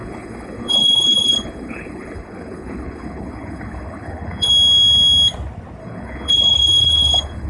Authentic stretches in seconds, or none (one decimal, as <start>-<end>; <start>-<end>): 4.5-5.8

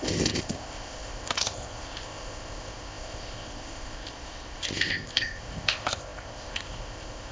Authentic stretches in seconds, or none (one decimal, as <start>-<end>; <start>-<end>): none

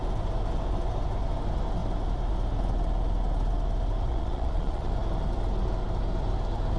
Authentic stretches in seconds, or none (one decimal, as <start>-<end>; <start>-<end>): 0.0-4.1; 4.9-6.8

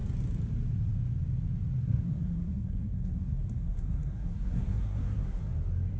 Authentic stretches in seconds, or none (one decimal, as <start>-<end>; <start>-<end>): 0.0-1.8; 5.4-6.0